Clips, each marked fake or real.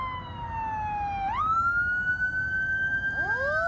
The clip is real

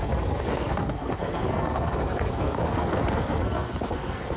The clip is fake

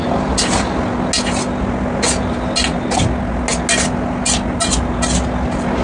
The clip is real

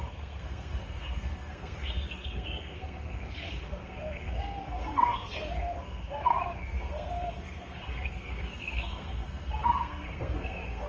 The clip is fake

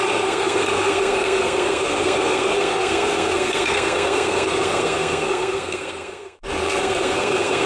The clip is fake